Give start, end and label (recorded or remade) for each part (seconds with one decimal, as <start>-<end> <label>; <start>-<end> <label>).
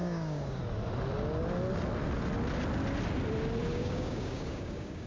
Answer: 0.0-0.6 remade; 0.6-3.7 recorded; 3.7-5.1 remade